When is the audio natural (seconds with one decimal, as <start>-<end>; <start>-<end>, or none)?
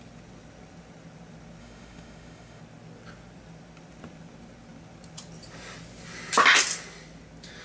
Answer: 0.0-1.6; 2.6-7.6